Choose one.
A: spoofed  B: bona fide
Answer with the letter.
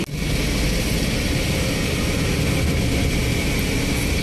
B